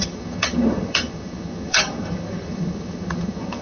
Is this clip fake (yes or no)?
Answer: yes